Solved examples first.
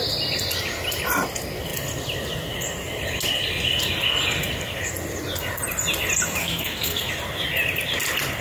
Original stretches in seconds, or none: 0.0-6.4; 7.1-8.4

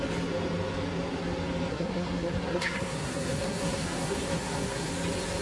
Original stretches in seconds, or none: 0.0-1.7; 4.9-5.4

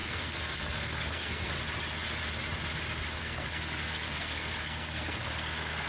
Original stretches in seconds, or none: 1.5-3.2

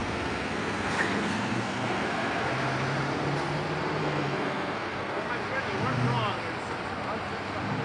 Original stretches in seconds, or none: 2.5-4.0; 5.3-7.8

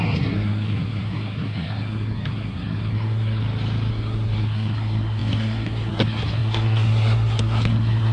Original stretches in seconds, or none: 3.4-3.9